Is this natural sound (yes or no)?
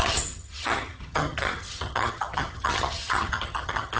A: no